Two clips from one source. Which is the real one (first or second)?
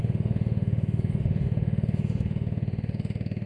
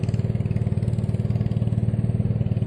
second